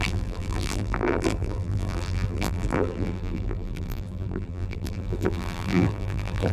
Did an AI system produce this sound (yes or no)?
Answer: yes